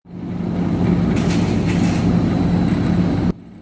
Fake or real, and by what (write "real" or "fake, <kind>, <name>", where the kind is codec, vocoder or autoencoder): real